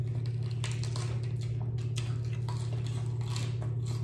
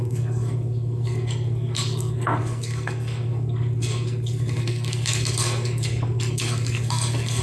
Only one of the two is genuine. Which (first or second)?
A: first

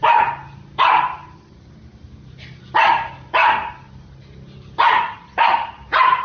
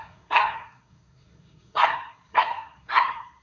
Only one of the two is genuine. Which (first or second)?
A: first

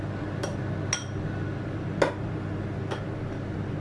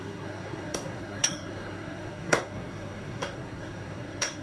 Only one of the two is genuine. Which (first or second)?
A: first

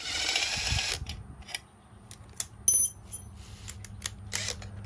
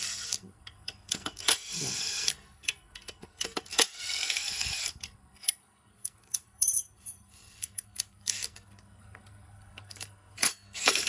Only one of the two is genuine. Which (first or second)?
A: first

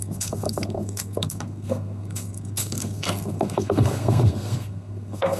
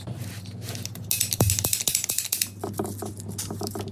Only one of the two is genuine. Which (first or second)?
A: second